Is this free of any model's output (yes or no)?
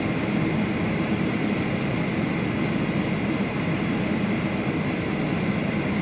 yes